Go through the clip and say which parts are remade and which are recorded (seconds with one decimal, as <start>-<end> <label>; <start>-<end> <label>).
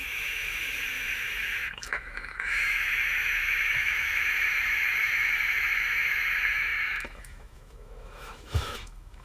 0.0-9.2 remade